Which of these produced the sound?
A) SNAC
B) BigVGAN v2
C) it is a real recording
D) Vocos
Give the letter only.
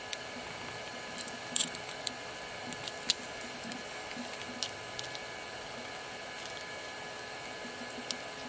C